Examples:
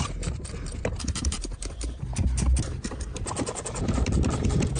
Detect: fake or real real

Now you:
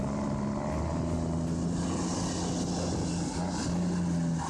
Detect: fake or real real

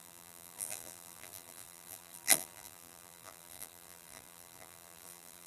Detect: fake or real fake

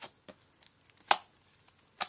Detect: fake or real real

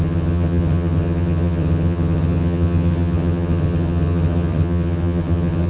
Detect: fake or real fake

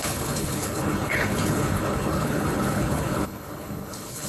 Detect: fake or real fake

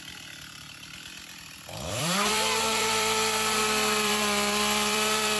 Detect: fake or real fake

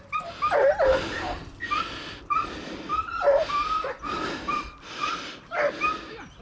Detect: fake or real real